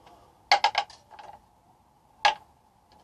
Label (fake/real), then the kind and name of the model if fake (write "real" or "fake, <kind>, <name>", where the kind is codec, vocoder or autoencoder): real